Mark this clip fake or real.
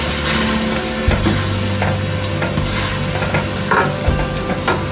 real